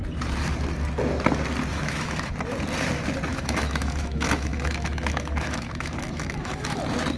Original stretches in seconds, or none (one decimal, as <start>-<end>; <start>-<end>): 0.0-1.7; 2.3-3.3; 6.8-7.2